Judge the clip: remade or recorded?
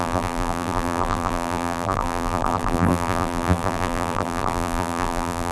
remade